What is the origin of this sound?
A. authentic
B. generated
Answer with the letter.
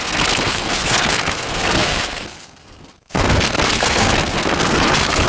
B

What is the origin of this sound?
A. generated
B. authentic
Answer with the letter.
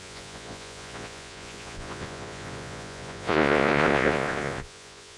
A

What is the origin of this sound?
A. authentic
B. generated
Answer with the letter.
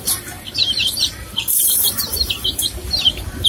B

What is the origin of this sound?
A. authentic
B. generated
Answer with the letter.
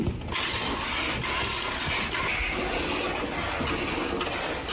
A